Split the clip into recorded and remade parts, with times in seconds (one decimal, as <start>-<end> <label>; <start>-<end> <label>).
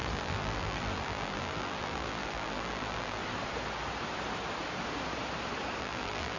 0.0-3.2 remade; 3.2-5.8 recorded; 5.8-6.4 remade